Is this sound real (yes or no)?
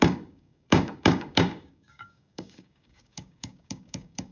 no